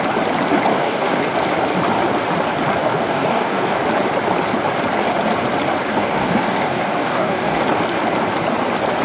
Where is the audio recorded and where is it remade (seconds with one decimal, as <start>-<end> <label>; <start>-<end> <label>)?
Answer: 0.0-0.7 recorded; 0.7-1.3 remade; 1.3-2.8 recorded; 2.8-3.8 remade; 3.8-5.9 recorded; 5.9-7.6 remade; 7.6-9.0 recorded